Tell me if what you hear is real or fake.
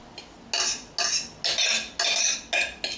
real